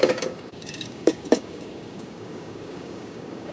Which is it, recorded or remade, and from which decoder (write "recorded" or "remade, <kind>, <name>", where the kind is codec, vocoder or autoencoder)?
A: remade, codec, DAC